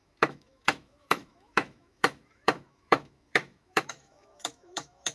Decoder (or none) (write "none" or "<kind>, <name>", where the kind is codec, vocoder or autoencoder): autoencoder, DAC-VAE